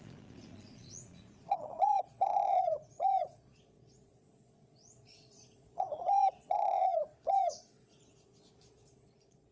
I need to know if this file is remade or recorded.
remade